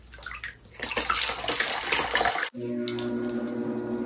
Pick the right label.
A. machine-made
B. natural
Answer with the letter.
B